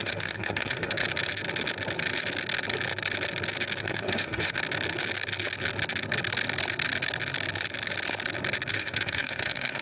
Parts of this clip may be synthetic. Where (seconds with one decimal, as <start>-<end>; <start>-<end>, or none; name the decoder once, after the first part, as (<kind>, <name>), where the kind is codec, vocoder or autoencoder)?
0.0-1.0 (autoencoder, DAC-VAE); 3.8-4.6; 8.7-9.8